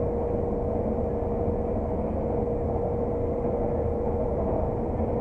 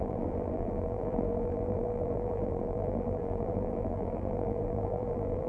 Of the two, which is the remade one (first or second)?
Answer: second